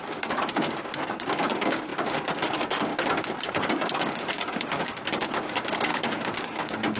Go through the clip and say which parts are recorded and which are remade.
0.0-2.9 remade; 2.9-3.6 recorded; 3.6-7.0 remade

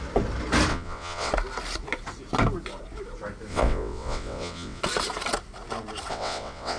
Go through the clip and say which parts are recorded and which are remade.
0.0-0.7 recorded; 0.7-1.3 remade; 1.3-3.5 recorded; 3.5-4.8 remade; 4.8-6.1 recorded; 6.1-6.8 remade

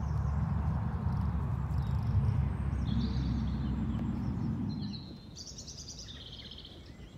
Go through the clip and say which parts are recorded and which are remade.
0.0-4.9 recorded; 4.9-6.4 remade; 6.4-7.2 recorded

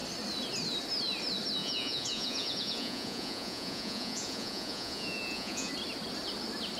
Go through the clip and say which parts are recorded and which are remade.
0.0-1.6 recorded; 1.6-5.7 remade; 5.7-6.8 recorded

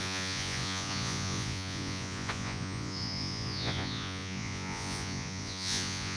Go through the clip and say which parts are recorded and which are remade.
0.0-6.2 remade

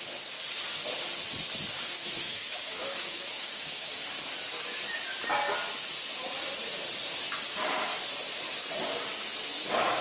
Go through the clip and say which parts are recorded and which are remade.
0.0-2.0 recorded; 2.0-3.9 remade; 3.9-10.0 recorded